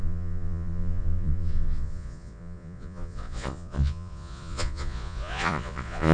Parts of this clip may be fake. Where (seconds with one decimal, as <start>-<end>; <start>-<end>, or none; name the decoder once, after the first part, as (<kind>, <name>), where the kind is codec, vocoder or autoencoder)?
0.0-6.1 (vocoder, Vocos)